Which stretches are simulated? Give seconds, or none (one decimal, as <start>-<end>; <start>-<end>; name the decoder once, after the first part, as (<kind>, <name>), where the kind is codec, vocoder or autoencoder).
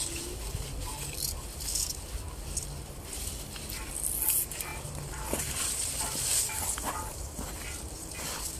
none